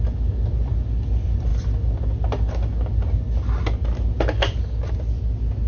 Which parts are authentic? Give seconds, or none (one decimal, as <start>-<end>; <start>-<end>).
0.0-5.7